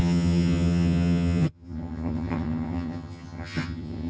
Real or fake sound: fake